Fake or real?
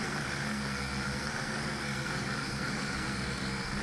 fake